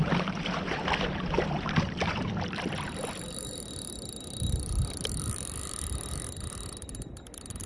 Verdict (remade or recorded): remade